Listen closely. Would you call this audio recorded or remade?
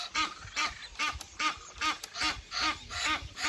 recorded